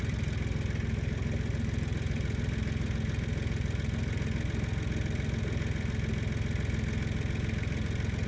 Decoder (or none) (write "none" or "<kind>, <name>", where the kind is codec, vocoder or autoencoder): none